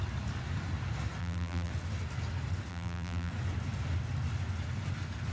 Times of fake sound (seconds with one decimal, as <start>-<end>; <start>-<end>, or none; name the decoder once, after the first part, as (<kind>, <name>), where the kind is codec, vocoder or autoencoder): 1.2-1.7 (vocoder, BigVGAN v2); 2.7-3.3